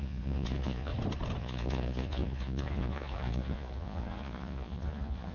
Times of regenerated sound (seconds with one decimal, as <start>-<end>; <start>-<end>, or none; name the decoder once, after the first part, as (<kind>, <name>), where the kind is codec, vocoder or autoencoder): 0.0-0.9 (vocoder, Vocos); 1.4-5.3